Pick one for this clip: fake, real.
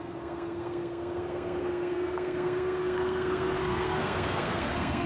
fake